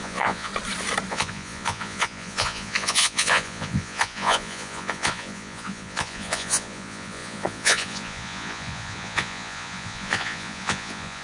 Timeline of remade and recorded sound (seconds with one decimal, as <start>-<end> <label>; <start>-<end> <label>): 0.0-0.5 remade; 0.5-1.1 recorded; 1.1-11.2 remade